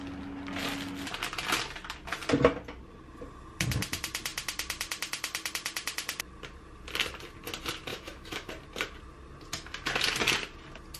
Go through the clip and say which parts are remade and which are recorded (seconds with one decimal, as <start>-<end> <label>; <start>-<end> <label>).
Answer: 0.0-7.9 recorded; 7.9-8.5 remade; 8.5-11.0 recorded